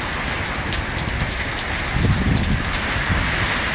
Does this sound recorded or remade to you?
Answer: recorded